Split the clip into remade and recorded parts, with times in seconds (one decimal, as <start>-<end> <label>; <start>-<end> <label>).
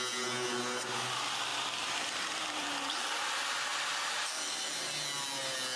0.0-1.5 recorded; 1.5-3.2 remade; 3.2-5.8 recorded